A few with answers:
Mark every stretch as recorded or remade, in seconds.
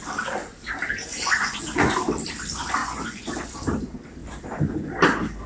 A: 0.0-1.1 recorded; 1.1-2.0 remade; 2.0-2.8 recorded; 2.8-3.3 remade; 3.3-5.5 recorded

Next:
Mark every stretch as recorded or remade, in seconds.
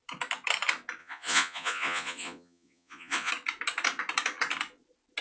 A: 0.0-1.0 recorded; 1.0-3.3 remade; 3.3-5.2 recorded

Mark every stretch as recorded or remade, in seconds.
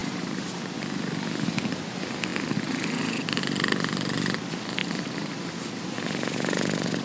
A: 0.0-0.5 remade; 0.5-4.8 recorded; 4.8-5.5 remade; 5.5-7.0 recorded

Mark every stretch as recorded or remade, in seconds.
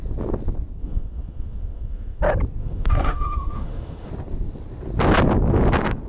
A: 0.0-0.8 recorded; 0.8-2.2 remade; 2.2-2.6 recorded; 2.6-4.1 remade; 4.1-6.1 recorded